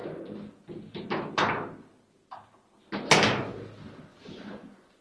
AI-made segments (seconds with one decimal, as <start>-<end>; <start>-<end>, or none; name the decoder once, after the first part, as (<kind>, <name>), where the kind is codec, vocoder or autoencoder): 4.1-5.0 (vocoder, Vocos)